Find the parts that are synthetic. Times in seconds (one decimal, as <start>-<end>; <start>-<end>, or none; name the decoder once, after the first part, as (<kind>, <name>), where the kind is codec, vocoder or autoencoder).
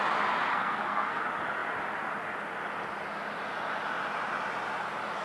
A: 0.5-1.2 (codec, SNAC)